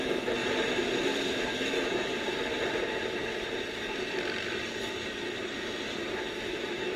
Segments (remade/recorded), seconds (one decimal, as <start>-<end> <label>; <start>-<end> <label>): 0.0-0.4 remade; 0.4-1.3 recorded; 1.3-2.1 remade; 2.1-6.3 recorded; 6.3-7.0 remade